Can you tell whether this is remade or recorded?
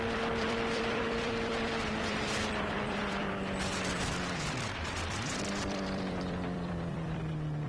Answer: remade